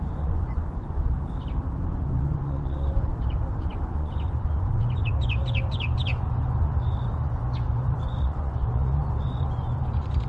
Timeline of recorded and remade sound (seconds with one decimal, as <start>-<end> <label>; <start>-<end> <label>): 0.0-1.1 remade; 1.1-1.8 recorded; 1.8-3.1 remade; 3.1-3.6 recorded; 3.6-10.3 remade